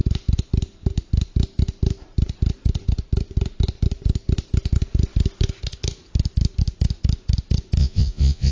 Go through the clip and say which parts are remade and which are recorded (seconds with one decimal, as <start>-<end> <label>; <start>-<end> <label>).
0.0-7.8 recorded; 7.8-8.5 remade